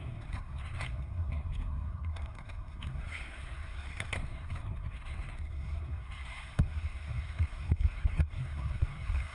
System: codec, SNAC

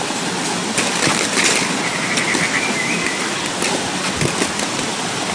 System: none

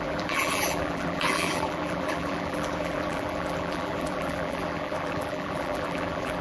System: vocoder, BigVGAN v2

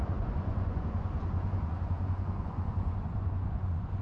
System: vocoder, Vocos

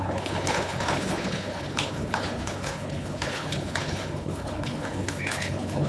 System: codec, HILCodec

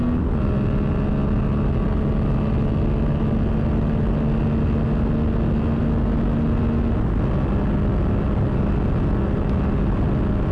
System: none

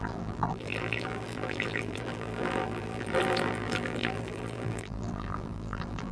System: vocoder, BigVGAN v2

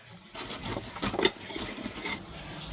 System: none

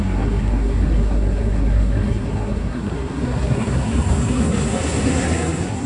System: codec, SNAC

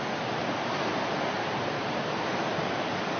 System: none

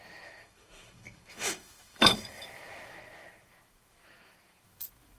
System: autoencoder, DAC-VAE